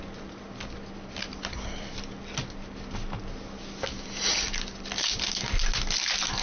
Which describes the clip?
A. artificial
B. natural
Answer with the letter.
B